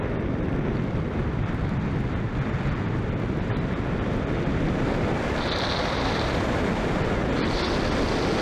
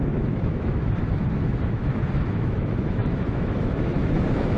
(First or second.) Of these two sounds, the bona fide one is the first